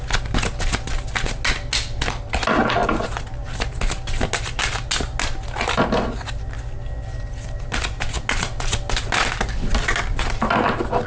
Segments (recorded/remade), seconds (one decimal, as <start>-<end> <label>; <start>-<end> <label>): 0.0-11.1 recorded

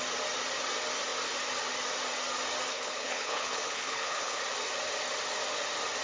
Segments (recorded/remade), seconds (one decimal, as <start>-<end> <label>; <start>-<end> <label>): 0.0-2.7 recorded; 2.7-4.4 remade; 4.4-6.0 recorded

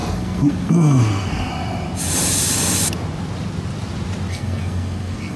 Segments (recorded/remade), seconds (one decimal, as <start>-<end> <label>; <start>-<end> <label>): 0.0-1.5 remade; 1.5-4.3 recorded; 4.3-5.4 remade